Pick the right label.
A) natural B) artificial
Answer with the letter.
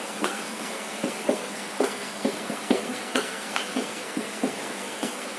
B